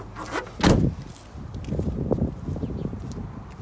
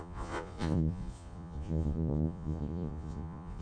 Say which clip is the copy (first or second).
second